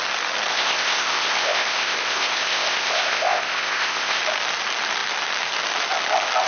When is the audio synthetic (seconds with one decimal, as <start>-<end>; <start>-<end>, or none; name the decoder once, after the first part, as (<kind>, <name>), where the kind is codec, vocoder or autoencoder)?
0.5-4.2 (codec, ZipCodec)